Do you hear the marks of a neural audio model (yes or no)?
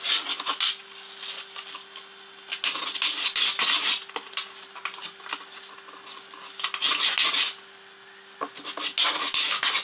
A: no